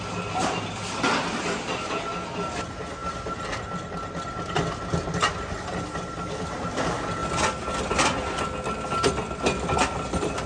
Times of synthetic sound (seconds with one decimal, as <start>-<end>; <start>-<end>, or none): none

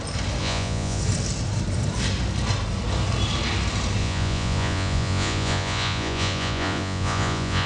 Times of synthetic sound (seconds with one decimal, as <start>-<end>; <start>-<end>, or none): 0.4-1.0; 4.0-7.7

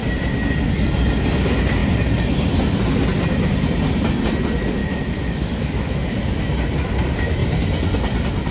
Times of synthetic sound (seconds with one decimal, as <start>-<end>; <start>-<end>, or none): 4.8-6.1

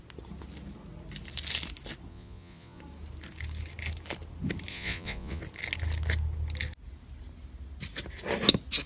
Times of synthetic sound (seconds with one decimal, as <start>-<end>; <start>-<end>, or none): 2.1-2.8; 4.7-5.4

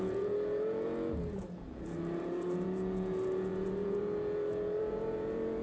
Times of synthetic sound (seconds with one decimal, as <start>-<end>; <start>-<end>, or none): 0.0-5.6